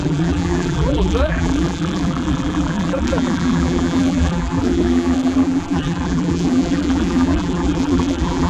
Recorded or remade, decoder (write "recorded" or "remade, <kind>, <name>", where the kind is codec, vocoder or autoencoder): remade, vocoder, BigVGAN v2